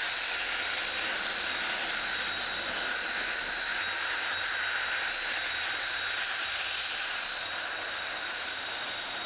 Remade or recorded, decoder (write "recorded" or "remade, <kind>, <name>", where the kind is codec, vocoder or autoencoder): recorded